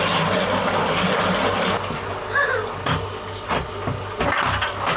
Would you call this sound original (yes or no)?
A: yes